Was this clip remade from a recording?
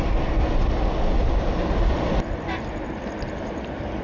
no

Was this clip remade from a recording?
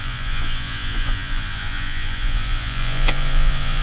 yes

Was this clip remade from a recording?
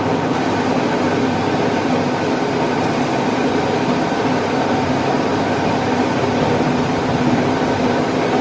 no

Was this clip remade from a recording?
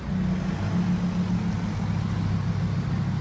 no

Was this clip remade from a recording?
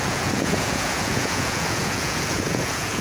yes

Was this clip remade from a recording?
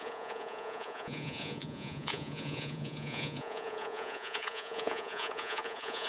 yes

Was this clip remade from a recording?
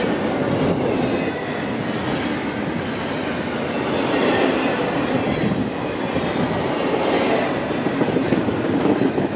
no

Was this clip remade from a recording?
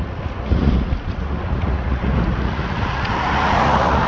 yes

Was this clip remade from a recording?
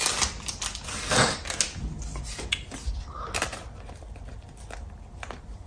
no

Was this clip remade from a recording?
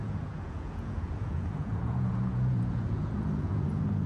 yes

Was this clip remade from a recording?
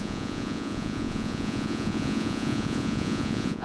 yes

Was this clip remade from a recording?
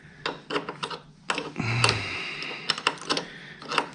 no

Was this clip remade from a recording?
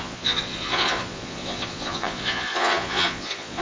yes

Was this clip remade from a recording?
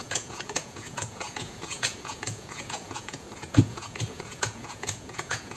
yes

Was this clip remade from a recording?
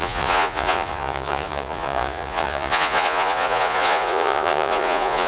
yes